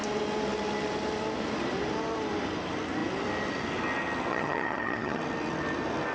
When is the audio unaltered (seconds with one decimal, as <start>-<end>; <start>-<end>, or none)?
0.0-4.3; 5.2-6.1